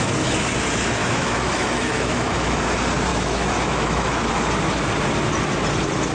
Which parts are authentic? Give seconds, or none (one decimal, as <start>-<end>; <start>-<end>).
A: 0.0-1.0; 2.6-3.1; 4.3-6.1